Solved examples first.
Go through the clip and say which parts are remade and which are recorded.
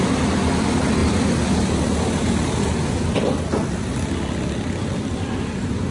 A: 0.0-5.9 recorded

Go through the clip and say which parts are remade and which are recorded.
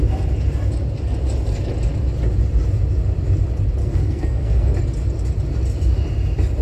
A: 0.0-3.8 recorded; 3.8-4.8 remade; 4.8-6.6 recorded